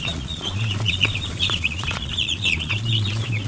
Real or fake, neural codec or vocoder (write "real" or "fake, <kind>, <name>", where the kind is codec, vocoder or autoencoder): fake, vocoder, Vocos